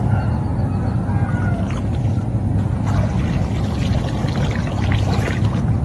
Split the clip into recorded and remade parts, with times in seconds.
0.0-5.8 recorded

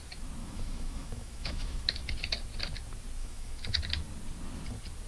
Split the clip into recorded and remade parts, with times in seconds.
0.0-0.4 recorded; 0.4-2.0 remade; 2.0-3.2 recorded; 3.2-3.8 remade; 3.8-5.1 recorded

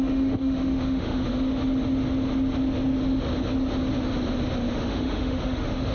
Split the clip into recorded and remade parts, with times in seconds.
0.0-1.2 remade; 1.2-4.7 recorded; 4.7-5.9 remade

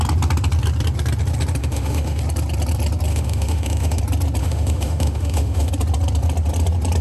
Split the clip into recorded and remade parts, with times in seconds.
0.0-1.6 recorded; 1.6-2.2 remade; 2.2-3.1 recorded; 3.1-4.0 remade; 4.0-4.4 recorded; 4.4-5.7 remade; 5.7-7.0 recorded

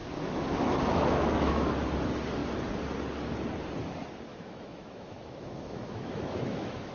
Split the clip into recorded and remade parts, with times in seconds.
0.0-1.7 remade; 1.7-4.3 recorded; 4.3-6.9 remade

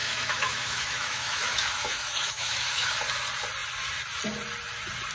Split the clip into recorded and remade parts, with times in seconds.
0.0-2.9 remade; 2.9-5.1 recorded